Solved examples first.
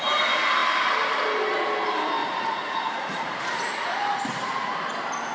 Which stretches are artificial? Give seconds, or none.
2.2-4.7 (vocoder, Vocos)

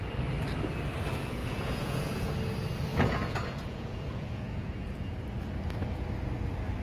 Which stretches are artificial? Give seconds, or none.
1.4-2.3 (vocoder, Vocos); 2.9-5.1

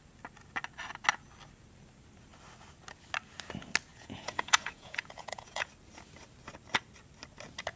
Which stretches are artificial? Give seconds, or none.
3.9-5.7 (vocoder, Vocos)

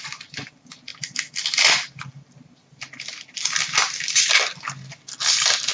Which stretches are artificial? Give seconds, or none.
none